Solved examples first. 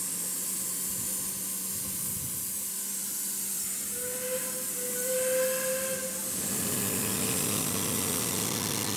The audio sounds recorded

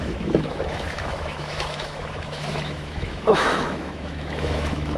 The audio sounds remade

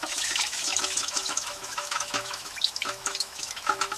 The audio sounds remade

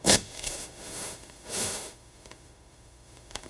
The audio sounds remade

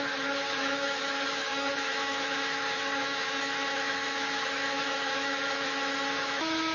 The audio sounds remade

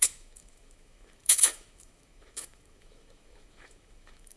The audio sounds remade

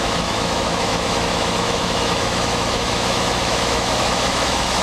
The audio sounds remade